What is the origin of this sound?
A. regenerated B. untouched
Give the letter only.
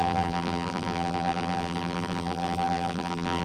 A